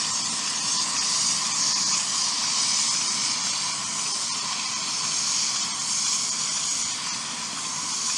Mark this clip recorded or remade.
recorded